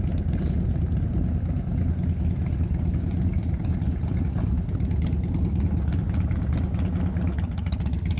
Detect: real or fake real